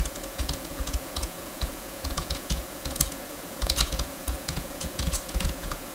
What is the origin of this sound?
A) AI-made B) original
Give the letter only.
A